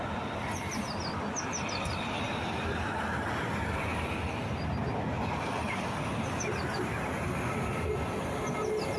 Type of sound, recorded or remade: recorded